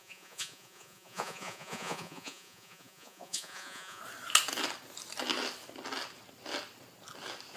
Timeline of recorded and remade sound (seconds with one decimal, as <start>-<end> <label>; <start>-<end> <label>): 0.0-4.0 remade; 4.0-7.6 recorded